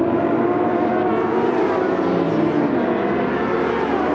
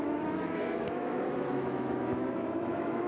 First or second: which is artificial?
second